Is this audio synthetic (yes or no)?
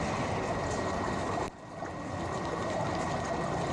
no